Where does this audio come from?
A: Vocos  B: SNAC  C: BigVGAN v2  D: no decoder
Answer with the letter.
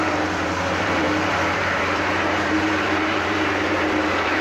C